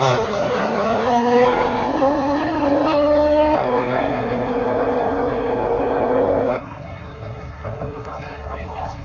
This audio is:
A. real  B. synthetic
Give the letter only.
B